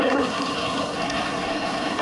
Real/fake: fake